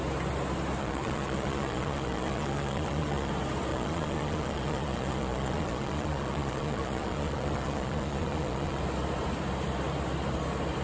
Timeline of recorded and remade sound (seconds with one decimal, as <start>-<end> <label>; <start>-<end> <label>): 0.0-0.8 recorded; 0.8-3.3 remade; 3.3-3.7 recorded; 3.7-8.8 remade; 8.8-10.8 recorded